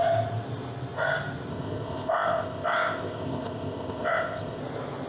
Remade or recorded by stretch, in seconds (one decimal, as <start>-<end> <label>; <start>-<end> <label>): 0.0-1.5 recorded; 1.5-4.6 remade; 4.6-5.1 recorded